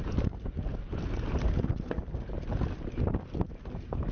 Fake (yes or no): yes